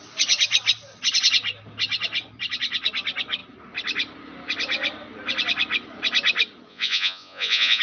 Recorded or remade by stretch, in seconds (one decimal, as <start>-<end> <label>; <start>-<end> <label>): 0.0-6.7 recorded; 6.7-7.8 remade